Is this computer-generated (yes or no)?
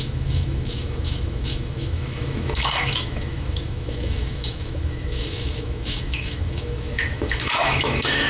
yes